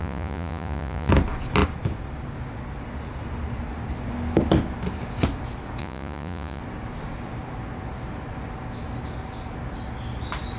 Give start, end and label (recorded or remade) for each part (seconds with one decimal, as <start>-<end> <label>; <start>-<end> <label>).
0.0-1.1 remade; 1.1-5.8 recorded; 5.8-6.6 remade; 6.6-10.6 recorded